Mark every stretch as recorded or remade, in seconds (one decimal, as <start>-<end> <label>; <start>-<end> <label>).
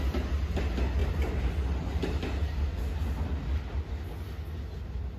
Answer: 0.0-5.2 recorded